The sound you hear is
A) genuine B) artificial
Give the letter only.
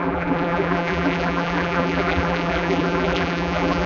B